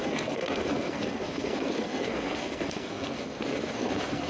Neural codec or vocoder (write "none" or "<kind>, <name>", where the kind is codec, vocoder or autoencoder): codec, SNAC